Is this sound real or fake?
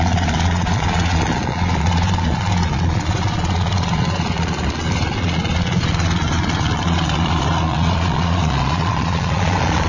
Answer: fake